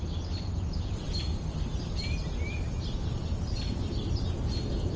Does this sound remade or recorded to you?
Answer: recorded